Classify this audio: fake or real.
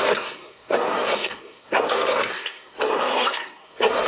fake